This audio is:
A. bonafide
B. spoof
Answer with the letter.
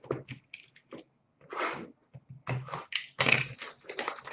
A